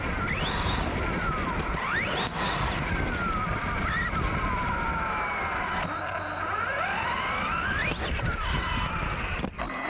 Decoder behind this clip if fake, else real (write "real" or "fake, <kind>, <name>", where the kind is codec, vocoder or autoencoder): real